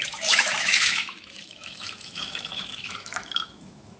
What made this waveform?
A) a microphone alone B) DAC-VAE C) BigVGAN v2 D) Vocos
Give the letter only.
B